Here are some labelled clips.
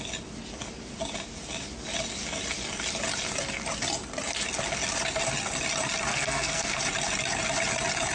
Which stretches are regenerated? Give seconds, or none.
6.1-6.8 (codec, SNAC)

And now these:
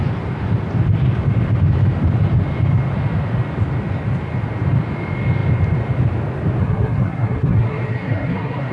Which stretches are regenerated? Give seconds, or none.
6.6-8.7 (codec, SNAC)

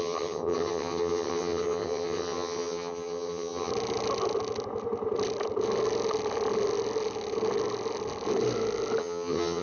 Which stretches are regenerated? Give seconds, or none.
0.0-3.7 (vocoder, HiFi-GAN); 9.0-9.6

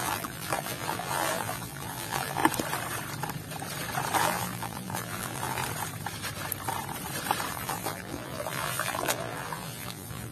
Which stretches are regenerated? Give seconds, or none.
0.0-2.4 (vocoder, BigVGAN v2); 4.2-5.6; 7.5-10.3